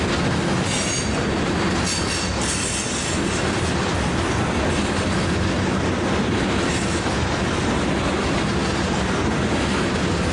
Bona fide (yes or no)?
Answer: yes